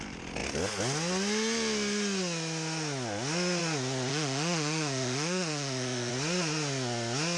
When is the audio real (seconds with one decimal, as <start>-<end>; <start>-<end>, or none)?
0.0-4.1; 6.1-7.4